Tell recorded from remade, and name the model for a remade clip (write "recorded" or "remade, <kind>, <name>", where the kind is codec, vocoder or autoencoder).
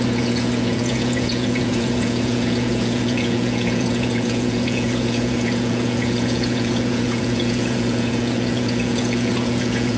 remade, vocoder, Vocos